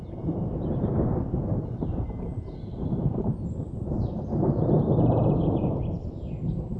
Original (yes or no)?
no